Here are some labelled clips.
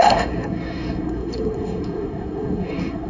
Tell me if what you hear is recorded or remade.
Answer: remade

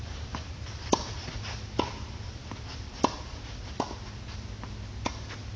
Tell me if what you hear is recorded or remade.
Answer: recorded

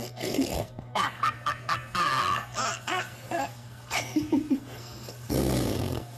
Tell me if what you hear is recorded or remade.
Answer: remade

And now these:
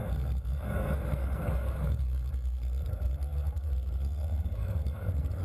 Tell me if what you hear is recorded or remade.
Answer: remade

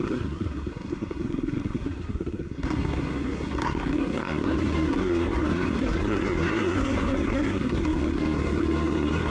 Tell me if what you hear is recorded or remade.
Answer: remade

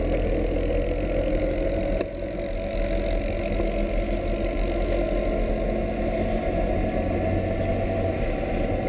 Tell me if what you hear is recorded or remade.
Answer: recorded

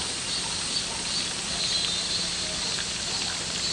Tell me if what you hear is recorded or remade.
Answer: recorded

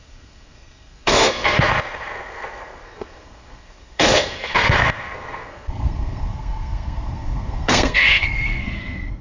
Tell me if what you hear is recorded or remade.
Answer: remade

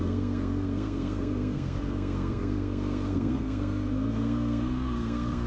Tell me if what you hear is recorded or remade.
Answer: remade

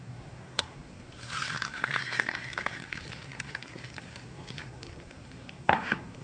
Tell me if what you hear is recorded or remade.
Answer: remade